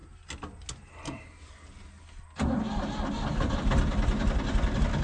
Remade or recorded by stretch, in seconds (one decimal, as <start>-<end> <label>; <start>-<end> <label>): 0.0-5.0 recorded